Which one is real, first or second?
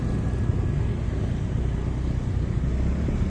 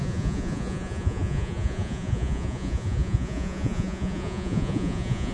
first